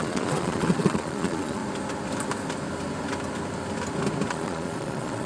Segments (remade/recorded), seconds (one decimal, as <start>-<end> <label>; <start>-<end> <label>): 0.0-1.6 remade; 1.6-4.3 recorded; 4.3-5.3 remade